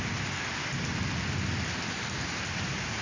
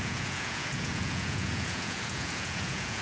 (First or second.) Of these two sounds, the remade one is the second